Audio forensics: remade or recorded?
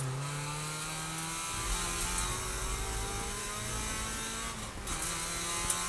recorded